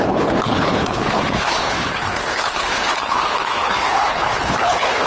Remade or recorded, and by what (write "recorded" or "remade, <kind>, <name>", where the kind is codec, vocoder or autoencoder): remade, codec, HILCodec